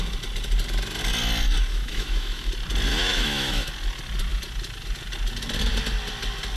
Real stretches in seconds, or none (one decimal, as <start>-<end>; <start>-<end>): 0.0-1.7; 2.5-2.9; 3.7-6.6